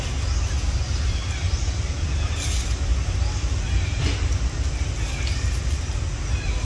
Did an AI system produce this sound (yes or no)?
no